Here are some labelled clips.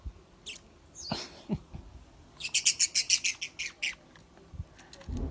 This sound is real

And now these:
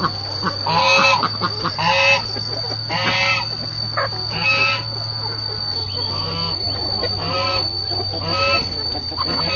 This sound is real